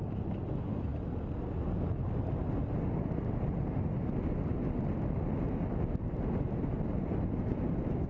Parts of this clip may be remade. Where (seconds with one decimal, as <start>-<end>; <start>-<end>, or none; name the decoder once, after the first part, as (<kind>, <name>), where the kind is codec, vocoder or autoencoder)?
none